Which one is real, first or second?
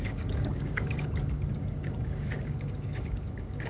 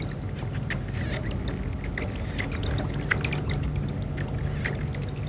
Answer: second